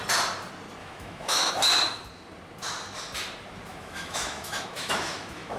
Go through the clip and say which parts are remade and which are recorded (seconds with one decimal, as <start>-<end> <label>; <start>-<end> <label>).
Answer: 0.0-0.8 recorded; 0.8-1.5 remade; 1.5-3.7 recorded; 3.7-5.6 remade